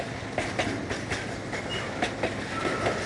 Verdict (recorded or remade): recorded